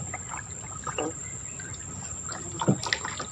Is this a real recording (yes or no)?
yes